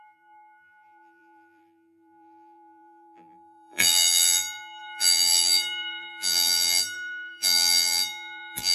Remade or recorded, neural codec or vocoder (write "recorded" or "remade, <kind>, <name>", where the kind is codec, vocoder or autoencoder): remade, vocoder, BigVGAN v2